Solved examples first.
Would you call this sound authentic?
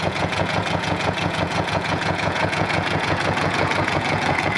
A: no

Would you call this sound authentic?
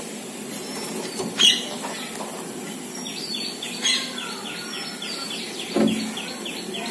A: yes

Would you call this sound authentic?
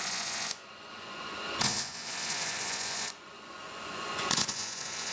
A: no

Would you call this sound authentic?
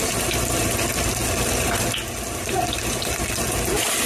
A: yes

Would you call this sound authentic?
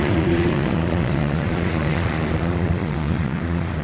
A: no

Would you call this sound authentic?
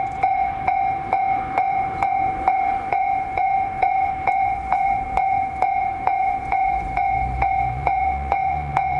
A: no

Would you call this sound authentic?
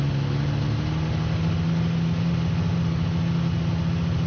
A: yes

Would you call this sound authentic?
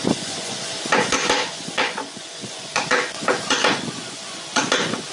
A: no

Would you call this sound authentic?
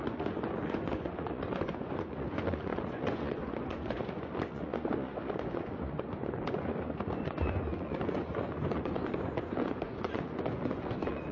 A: no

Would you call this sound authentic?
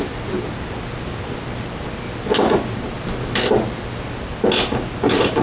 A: yes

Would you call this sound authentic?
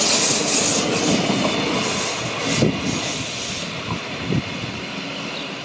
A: yes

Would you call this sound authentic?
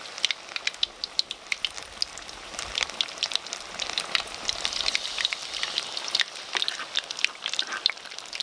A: yes